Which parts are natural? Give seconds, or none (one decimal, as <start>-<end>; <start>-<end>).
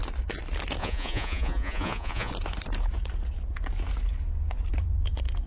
0.0-0.8; 2.3-5.5